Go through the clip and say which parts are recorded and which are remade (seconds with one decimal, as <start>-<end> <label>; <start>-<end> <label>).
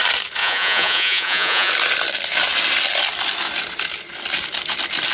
0.0-0.4 recorded; 0.4-1.7 remade; 1.7-5.1 recorded